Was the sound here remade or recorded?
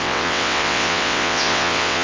remade